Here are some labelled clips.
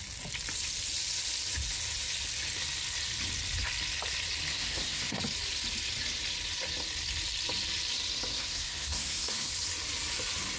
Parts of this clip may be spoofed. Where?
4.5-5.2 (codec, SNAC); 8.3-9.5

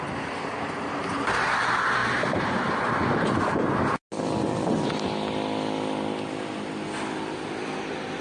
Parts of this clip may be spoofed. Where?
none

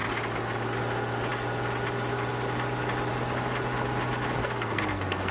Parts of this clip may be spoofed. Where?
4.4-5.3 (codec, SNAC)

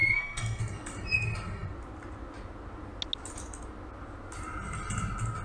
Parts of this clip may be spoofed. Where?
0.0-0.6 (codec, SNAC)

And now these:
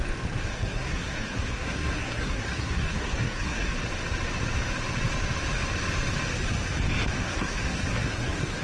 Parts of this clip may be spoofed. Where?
0.5-3.7 (codec, SNAC); 7.2-8.6

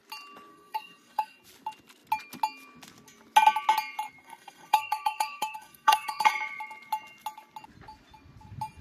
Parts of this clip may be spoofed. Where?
0.5-1.4 (codec, SNAC); 4.2-6.3